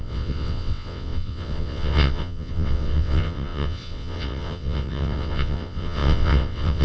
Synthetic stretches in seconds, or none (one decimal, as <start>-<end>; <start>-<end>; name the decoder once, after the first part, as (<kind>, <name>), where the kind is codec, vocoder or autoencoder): 0.0-6.8 (vocoder, WaveNeXt)